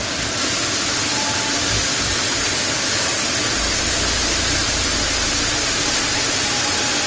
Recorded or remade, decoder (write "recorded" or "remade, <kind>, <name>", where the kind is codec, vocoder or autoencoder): recorded